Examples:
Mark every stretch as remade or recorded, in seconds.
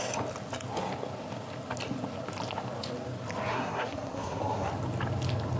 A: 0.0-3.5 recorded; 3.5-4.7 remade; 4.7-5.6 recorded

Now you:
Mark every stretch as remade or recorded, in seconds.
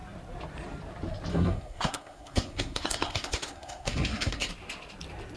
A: 0.0-1.3 recorded; 1.3-4.5 remade; 4.5-5.4 recorded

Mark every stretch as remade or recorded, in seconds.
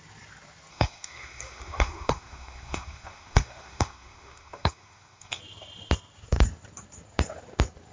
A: 0.0-0.7 recorded; 0.7-5.4 remade; 5.4-7.9 recorded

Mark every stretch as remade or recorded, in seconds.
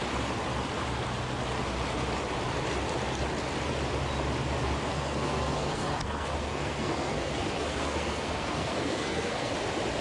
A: 0.0-4.9 recorded; 4.9-9.5 remade; 9.5-10.0 recorded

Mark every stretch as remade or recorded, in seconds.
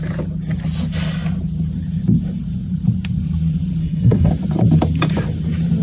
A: 0.0-3.8 recorded; 3.8-4.3 remade; 4.3-5.8 recorded